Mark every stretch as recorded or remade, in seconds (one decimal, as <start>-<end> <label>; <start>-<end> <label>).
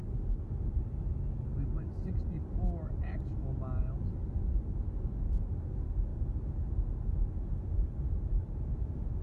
0.0-9.2 recorded